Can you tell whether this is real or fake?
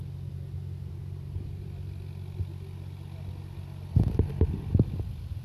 real